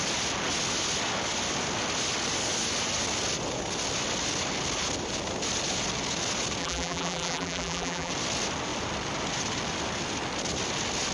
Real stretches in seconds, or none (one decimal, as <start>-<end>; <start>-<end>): 0.0-6.6; 8.1-11.1